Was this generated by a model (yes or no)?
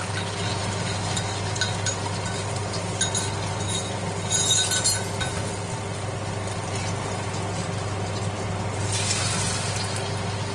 no